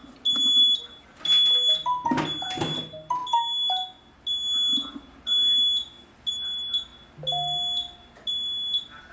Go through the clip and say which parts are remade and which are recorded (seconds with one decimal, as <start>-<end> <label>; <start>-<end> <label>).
0.0-9.1 recorded